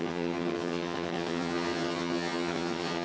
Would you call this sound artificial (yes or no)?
yes